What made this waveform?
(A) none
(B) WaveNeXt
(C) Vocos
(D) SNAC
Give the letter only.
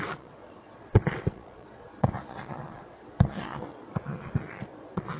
C